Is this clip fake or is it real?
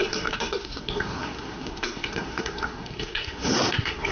fake